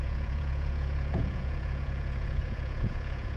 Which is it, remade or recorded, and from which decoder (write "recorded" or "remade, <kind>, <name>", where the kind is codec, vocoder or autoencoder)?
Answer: remade, vocoder, Vocos